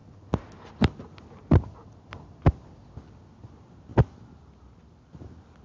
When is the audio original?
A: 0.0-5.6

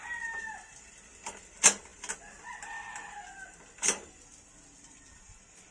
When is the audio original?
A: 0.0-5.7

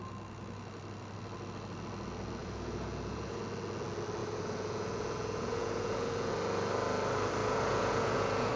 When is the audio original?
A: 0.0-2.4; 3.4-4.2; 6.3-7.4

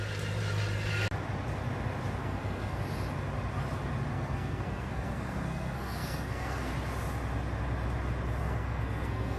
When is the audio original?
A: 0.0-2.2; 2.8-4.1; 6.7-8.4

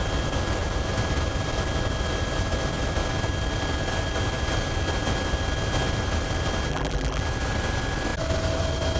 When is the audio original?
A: 0.0-6.7; 7.2-9.0

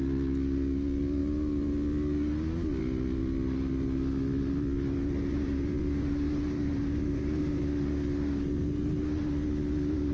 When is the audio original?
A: 0.0-5.2; 7.6-10.1